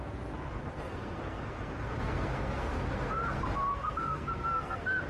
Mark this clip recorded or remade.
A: remade